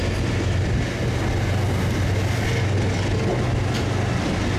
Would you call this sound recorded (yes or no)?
yes